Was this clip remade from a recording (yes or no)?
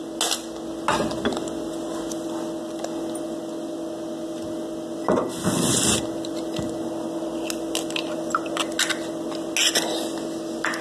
no